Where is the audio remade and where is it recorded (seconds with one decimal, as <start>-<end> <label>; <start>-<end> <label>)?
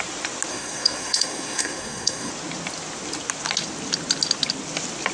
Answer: 0.0-0.5 recorded; 0.5-2.3 remade; 2.3-5.1 recorded